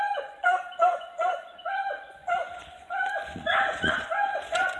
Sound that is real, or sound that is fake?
fake